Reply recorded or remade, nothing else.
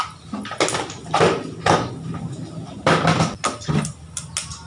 recorded